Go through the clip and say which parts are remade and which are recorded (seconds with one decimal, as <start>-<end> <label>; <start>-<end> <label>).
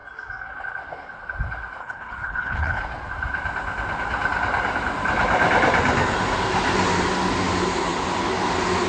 0.0-1.8 recorded; 1.8-2.8 remade; 2.8-8.9 recorded